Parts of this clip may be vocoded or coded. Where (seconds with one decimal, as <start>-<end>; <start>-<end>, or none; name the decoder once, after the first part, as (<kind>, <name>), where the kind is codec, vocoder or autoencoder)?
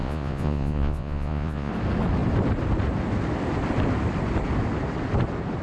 0.0-1.7 (vocoder, Vocos)